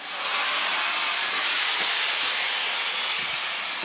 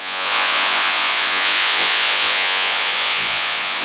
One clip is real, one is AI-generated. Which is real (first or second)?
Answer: first